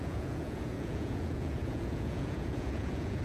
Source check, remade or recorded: remade